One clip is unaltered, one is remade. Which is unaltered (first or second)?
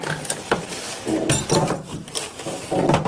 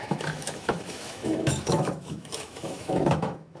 first